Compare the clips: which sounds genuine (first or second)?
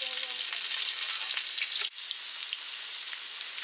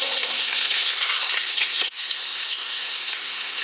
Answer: first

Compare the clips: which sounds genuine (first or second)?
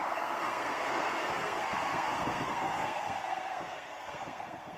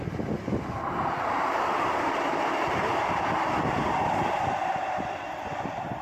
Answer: second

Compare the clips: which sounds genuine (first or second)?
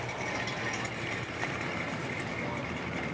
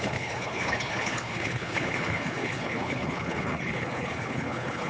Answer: first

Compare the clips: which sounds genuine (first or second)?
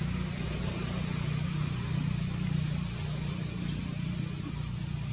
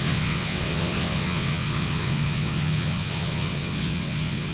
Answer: first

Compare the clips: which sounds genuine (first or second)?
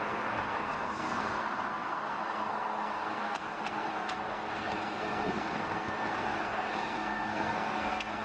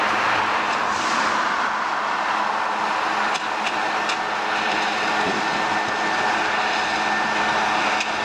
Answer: second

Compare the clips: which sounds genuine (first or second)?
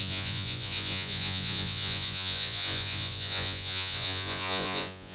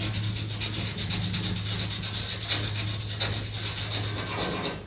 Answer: second